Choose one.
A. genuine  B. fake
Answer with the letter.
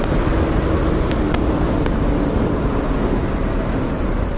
A